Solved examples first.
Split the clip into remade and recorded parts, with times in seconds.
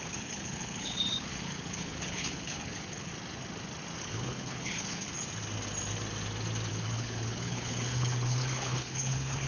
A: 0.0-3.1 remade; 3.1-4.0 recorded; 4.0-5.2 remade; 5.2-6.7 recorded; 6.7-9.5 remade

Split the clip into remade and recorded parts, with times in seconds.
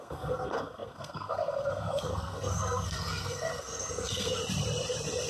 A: 0.0-4.4 remade; 4.4-5.3 recorded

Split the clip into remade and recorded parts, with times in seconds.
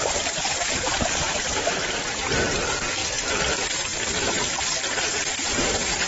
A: 0.0-3.0 remade; 3.0-3.5 recorded; 3.5-3.9 remade; 3.9-5.2 recorded; 5.2-6.1 remade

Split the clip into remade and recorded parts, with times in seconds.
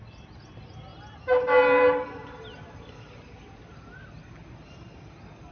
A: 0.0-0.9 recorded; 0.9-4.2 remade; 4.2-5.5 recorded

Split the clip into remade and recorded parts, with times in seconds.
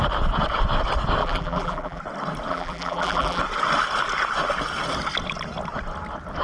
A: 0.0-1.2 recorded; 1.2-2.0 remade; 2.0-2.5 recorded; 2.5-3.4 remade; 3.4-6.4 recorded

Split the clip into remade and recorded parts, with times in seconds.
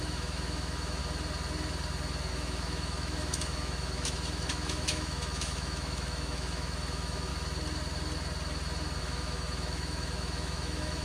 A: 0.0-1.0 remade; 1.0-2.3 recorded; 2.3-7.3 remade; 7.3-9.0 recorded; 9.0-11.0 remade